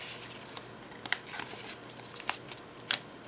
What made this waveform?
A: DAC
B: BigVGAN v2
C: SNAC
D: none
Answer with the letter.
D